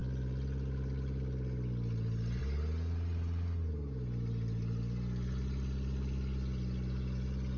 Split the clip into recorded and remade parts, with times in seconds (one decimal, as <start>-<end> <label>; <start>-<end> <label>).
0.0-7.6 recorded

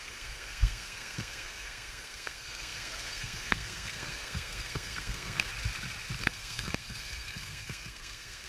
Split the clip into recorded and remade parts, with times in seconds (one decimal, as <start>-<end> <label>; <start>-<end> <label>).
0.0-5.5 remade; 5.5-6.2 recorded; 6.2-8.5 remade